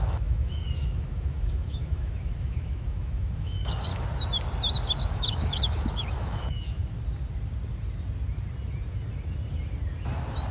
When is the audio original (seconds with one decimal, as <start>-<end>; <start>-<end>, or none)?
3.9-5.1; 6.8-10.5